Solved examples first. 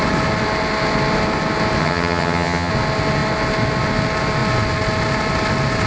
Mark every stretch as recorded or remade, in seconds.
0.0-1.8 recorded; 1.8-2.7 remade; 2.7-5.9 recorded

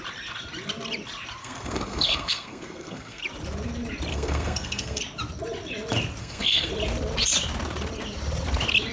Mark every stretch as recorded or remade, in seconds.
0.0-1.4 recorded; 1.4-3.2 remade; 3.2-4.1 recorded; 4.1-5.0 remade; 5.0-6.2 recorded; 6.2-6.7 remade; 6.7-8.9 recorded

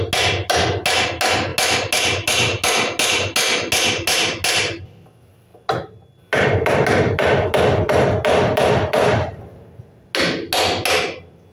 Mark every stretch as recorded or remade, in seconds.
0.0-11.5 recorded

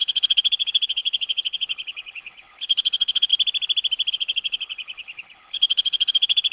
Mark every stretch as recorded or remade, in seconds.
0.0-3.3 remade; 3.3-4.1 recorded; 4.1-6.5 remade

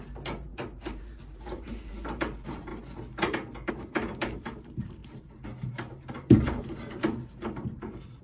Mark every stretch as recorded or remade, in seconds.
0.0-2.7 remade; 2.7-3.7 recorded; 3.7-5.0 remade; 5.0-5.7 recorded; 5.7-8.2 remade

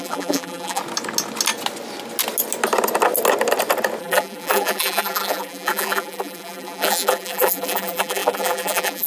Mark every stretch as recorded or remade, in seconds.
0.0-0.8 remade; 0.8-4.0 recorded; 4.0-9.1 remade

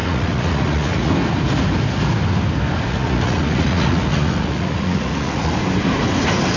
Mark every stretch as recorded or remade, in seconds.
0.0-1.1 remade; 1.1-2.9 recorded; 2.9-5.5 remade; 5.5-6.6 recorded